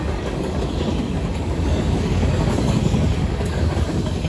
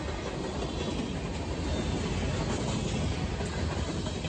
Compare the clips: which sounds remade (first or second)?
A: first